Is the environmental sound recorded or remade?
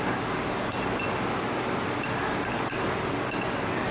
recorded